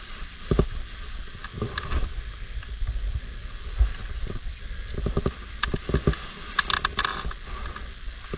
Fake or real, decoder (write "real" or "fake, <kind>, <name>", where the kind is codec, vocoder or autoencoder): real